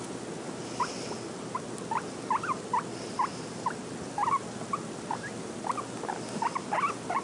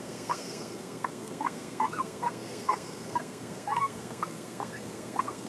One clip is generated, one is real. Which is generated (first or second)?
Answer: second